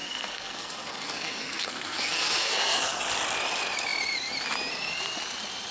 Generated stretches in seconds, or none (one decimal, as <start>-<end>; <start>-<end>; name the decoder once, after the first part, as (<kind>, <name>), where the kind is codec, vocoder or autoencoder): 0.0-3.0 (codec, SNAC)